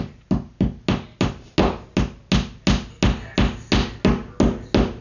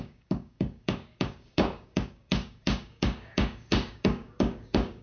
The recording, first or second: first